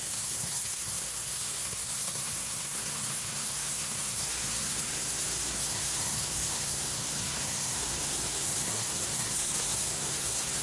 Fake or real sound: fake